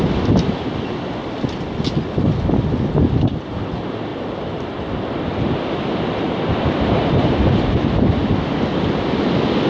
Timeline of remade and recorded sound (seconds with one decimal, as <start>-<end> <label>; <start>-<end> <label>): 0.0-9.7 recorded